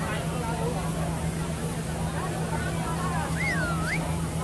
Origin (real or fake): real